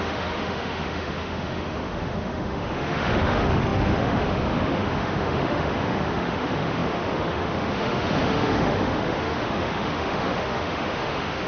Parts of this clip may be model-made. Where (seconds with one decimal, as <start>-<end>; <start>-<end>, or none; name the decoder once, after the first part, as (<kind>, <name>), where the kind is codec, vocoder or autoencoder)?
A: 0.0-11.5 (autoencoder, DAC-VAE)

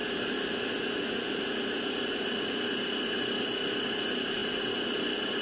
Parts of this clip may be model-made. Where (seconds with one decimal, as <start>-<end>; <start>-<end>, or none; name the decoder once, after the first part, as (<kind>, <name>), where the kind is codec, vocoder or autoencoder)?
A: none

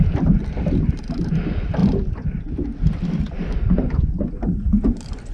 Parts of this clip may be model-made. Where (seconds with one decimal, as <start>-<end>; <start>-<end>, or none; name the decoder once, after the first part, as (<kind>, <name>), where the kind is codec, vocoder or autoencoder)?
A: none

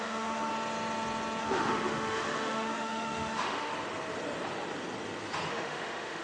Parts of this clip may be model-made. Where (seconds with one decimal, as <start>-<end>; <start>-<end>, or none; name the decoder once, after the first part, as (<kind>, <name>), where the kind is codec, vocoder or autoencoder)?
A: 0.0-0.5 (autoencoder, DAC-VAE); 1.4-3.7; 5.5-6.2

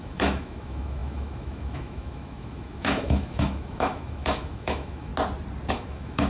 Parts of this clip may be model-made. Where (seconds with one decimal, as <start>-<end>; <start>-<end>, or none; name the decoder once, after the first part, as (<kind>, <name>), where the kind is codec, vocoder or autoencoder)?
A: 0.0-5.1 (autoencoder, DAC-VAE); 5.7-6.3

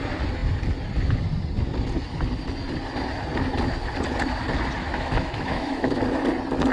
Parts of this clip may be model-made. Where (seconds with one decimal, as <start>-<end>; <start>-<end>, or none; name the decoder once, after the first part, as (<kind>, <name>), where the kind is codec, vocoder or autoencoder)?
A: 4.8-6.0 (autoencoder, DAC-VAE)